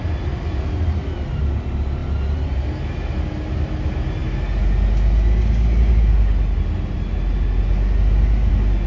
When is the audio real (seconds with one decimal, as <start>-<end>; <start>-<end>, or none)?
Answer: 0.0-8.9